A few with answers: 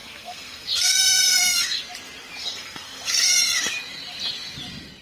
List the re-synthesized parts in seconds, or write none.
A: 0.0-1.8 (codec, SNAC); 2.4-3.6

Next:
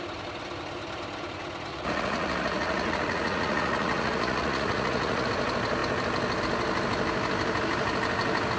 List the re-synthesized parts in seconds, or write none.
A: 1.7-5.3 (vocoder, Vocos)

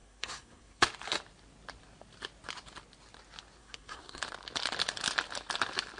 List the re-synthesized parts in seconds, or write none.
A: 0.0-0.8 (codec, SNAC); 3.6-4.2